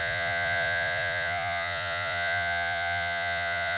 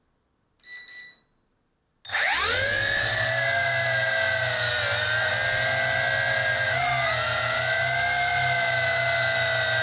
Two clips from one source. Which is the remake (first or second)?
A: first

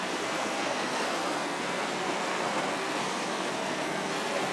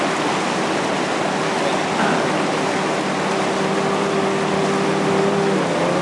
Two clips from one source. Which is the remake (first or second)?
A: first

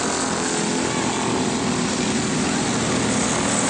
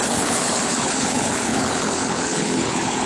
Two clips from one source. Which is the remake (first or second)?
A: second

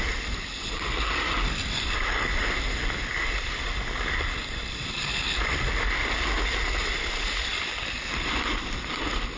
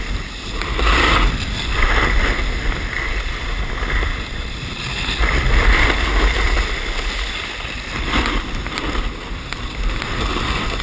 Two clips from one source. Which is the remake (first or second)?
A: first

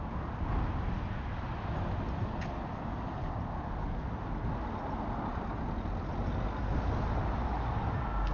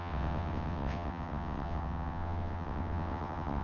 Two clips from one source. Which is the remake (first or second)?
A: second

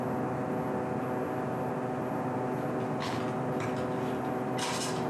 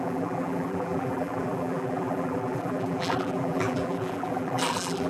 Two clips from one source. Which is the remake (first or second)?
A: second